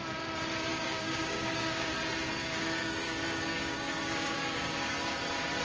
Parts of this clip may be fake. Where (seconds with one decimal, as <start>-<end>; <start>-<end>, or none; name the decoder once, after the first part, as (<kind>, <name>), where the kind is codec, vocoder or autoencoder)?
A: 0.7-1.9 (codec, DAC); 2.4-4.9